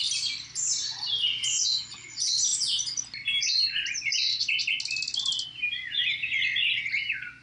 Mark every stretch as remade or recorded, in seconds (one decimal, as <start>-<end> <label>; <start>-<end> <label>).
0.0-7.4 recorded